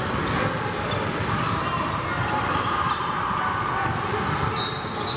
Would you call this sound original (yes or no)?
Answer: yes